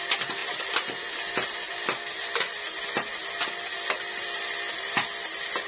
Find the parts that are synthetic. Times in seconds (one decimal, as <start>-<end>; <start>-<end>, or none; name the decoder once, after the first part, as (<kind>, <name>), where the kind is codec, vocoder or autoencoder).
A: none